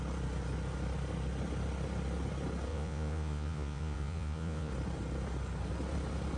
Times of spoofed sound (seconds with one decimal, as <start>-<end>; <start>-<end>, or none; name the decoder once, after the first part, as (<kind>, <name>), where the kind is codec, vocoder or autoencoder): 2.7-4.7 (vocoder, Vocos)